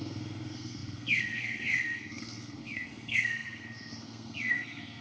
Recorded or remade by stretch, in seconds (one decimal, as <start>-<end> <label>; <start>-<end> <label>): 0.0-5.0 remade